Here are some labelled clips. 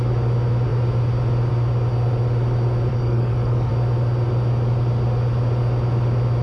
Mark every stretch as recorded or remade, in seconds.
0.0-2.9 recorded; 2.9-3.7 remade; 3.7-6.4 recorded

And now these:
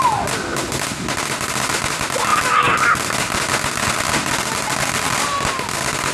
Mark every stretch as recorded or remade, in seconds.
0.0-6.1 recorded

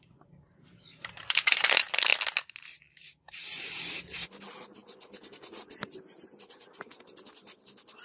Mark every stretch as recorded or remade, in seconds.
0.0-2.1 remade; 2.1-3.3 recorded; 3.3-8.0 remade

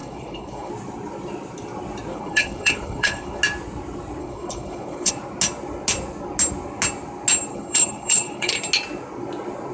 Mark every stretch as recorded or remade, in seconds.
0.0-0.7 remade; 0.7-2.1 recorded; 2.1-3.4 remade; 3.4-4.2 recorded; 4.2-5.1 remade; 5.1-7.5 recorded; 7.5-8.5 remade; 8.5-9.7 recorded